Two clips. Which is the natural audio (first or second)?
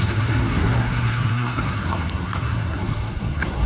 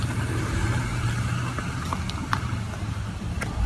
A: second